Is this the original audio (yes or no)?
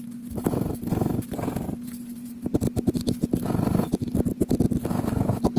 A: yes